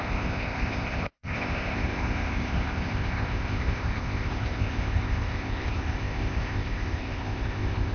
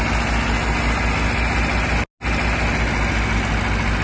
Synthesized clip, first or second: first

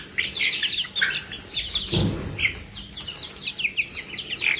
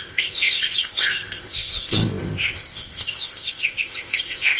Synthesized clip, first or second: second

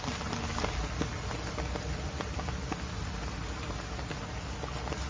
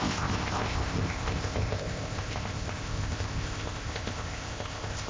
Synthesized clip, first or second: second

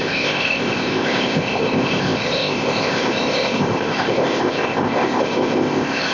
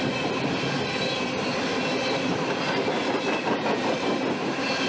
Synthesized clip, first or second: first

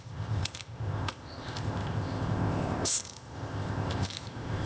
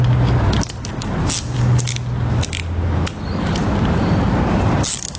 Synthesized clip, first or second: first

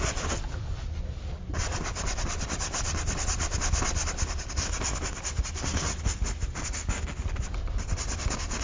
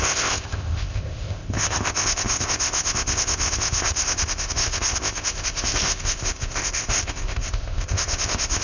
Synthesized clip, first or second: second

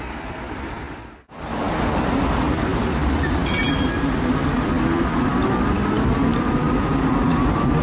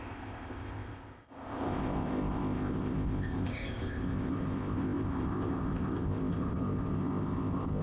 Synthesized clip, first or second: second